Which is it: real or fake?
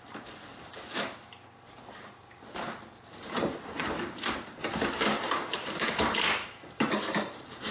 fake